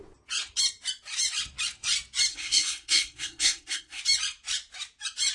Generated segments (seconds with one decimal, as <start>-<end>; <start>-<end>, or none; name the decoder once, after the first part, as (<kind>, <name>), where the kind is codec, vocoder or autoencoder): 2.3-4.0 (codec, SNAC)